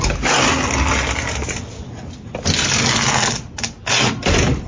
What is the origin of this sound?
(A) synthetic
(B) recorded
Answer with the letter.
B